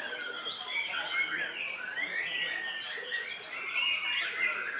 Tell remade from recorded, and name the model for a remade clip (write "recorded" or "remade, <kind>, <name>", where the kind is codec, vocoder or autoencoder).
recorded